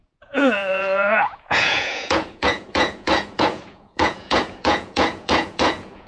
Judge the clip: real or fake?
fake